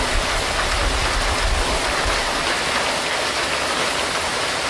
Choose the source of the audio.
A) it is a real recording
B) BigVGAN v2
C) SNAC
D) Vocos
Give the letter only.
A